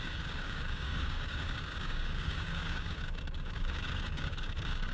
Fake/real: fake